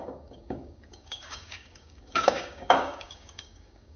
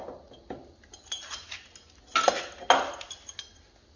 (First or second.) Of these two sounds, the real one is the second